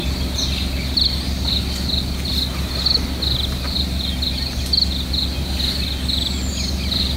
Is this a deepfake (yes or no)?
no